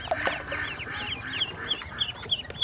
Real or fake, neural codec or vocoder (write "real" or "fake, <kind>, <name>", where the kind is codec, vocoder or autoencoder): real